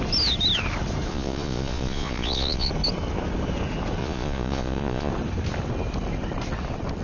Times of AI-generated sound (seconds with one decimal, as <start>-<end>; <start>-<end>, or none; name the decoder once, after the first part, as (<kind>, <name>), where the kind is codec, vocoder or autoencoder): 1.1-2.7 (vocoder, Vocos); 4.0-5.1